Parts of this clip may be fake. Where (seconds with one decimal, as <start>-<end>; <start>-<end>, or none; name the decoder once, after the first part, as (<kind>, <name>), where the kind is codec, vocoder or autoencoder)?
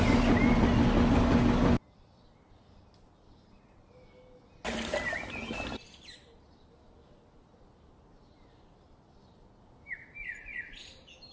10.2-10.9 (vocoder, Vocos)